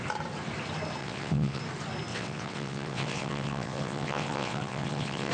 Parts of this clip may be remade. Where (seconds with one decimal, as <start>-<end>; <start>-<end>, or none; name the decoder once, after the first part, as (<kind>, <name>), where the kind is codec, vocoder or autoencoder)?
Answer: 1.0-1.6 (vocoder, WaveNeXt); 2.1-5.3